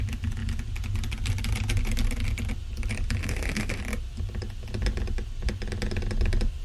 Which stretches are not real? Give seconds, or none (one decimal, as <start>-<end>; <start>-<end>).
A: 3.2-3.8

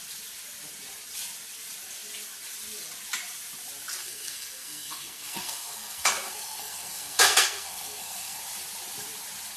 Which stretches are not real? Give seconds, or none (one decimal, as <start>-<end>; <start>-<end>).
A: 4.0-8.4